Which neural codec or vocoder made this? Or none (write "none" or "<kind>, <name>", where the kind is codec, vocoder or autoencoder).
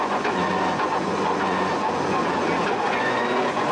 vocoder, Vocos